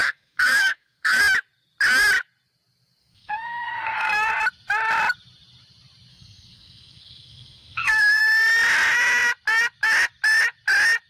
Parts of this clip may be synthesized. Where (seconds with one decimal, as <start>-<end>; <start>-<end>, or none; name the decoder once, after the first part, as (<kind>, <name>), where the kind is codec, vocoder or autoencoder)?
0.0-1.2 (codec, SNAC); 3.0-4.3; 6.1-8.2